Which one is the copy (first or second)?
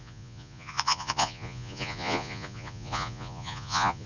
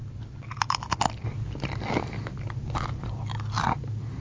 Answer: first